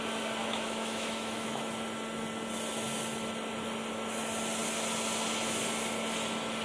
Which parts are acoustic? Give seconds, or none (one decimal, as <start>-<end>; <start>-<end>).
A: 0.0-0.4; 1.6-6.6